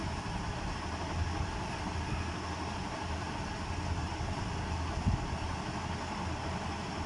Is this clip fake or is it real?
real